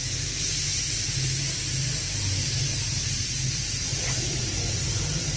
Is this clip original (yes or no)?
no